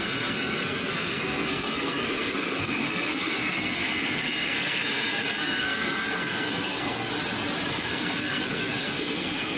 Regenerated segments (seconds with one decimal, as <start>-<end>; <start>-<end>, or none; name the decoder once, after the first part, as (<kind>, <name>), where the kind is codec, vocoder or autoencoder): 0.0-7.1 (codec, SNAC); 7.7-9.6